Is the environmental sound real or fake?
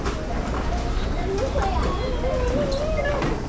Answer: real